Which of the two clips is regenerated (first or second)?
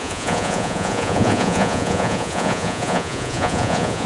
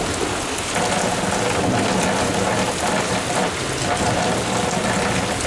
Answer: first